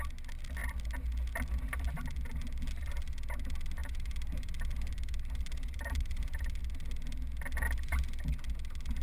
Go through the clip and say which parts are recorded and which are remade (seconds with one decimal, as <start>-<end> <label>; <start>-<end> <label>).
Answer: 0.0-3.8 recorded; 3.8-6.6 remade; 6.6-9.0 recorded